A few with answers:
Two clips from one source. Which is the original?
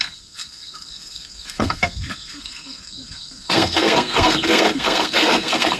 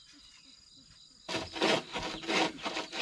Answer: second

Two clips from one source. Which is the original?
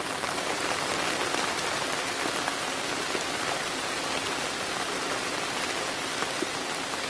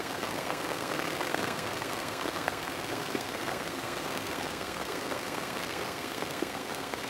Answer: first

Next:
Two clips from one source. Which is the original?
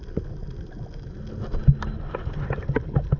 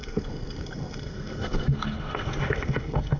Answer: first